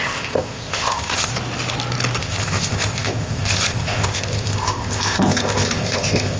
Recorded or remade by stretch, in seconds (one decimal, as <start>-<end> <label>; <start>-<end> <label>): 0.0-1.3 remade; 1.3-2.2 recorded; 2.2-6.4 remade